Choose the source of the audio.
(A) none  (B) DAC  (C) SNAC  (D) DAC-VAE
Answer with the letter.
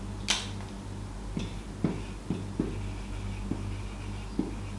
A